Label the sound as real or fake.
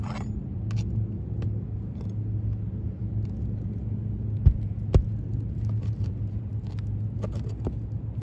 real